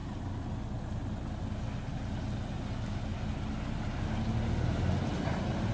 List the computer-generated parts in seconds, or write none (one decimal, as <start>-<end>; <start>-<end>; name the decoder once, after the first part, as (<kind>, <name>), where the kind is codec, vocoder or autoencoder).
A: none